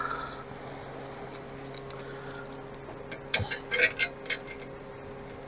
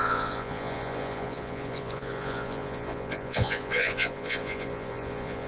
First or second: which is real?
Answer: first